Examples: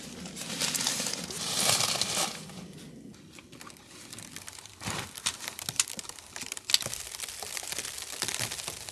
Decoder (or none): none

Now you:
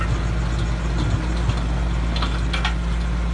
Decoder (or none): none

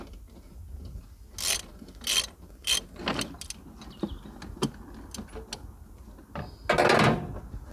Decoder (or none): none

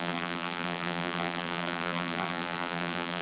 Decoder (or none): vocoder, BigVGAN v2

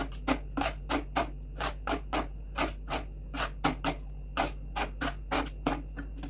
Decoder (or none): none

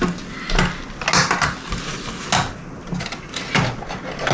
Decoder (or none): none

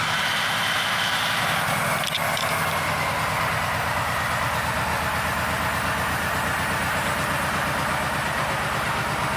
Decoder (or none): none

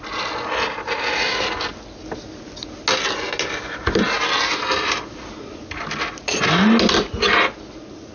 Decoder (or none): none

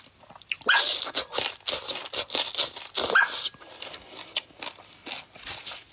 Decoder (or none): none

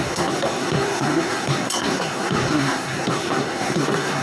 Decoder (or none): codec, SNAC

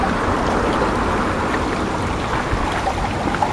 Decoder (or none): none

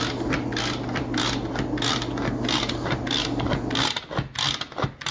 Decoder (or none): none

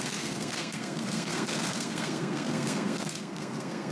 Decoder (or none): codec, SNAC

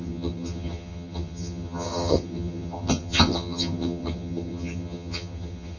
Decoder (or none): vocoder, HiFi-GAN